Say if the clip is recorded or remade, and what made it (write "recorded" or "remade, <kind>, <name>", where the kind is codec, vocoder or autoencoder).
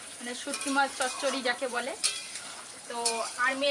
remade, vocoder, BigVGAN v2